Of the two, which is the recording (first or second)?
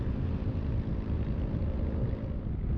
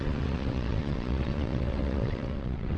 first